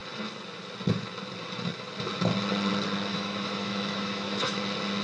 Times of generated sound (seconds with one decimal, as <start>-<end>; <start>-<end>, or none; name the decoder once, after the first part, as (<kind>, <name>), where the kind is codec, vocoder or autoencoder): 3.1-4.6 (autoencoder, DAC-VAE)